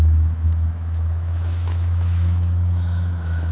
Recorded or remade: remade